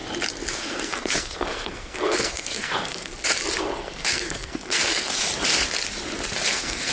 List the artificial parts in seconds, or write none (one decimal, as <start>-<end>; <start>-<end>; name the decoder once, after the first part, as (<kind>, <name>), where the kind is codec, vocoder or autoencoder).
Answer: 0.5-3.1 (codec, SNAC); 3.6-5.1; 6.5-6.9